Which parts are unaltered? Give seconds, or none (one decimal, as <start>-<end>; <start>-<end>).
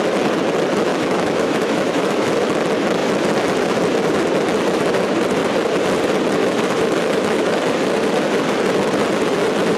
0.0-0.9; 2.3-6.4; 7.7-9.8